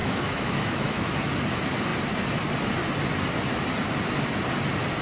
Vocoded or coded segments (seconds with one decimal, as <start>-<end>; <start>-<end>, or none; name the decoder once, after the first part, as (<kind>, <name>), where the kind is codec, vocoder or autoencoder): 0.0-1.3 (autoencoder, DAC-VAE)